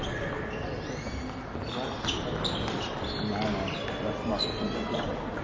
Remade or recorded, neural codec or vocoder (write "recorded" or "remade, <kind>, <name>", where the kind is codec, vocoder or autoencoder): recorded